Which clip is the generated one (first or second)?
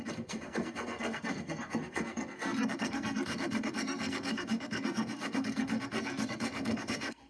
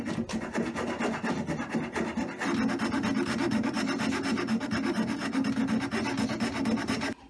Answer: first